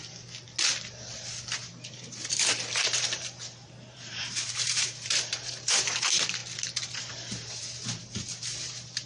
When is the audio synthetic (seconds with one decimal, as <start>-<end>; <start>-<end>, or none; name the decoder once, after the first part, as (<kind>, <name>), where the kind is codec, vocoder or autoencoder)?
1.7-6.4 (vocoder, BigVGAN v2); 7.0-9.1